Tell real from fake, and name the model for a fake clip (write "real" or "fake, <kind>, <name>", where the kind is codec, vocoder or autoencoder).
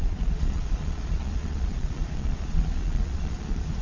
fake, vocoder, Vocos